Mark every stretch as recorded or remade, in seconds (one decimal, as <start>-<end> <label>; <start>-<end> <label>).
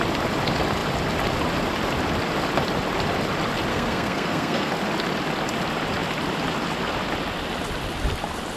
0.0-3.7 recorded; 3.7-4.7 remade; 4.7-8.6 recorded